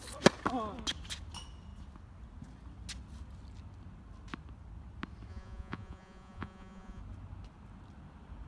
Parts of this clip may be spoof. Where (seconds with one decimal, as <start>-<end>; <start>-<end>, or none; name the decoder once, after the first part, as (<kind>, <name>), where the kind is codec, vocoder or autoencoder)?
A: 5.3-7.0 (vocoder, Vocos)